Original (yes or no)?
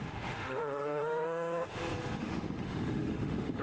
no